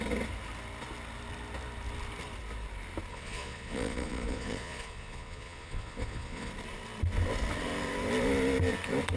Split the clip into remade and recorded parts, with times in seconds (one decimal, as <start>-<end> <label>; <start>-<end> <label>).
0.0-3.1 recorded; 3.1-6.5 remade; 6.5-9.2 recorded